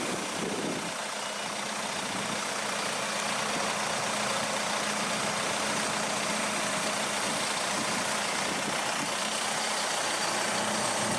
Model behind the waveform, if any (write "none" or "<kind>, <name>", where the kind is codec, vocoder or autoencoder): none